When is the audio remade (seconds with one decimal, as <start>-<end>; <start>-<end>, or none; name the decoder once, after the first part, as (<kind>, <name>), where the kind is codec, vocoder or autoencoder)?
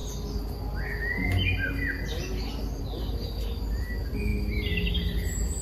none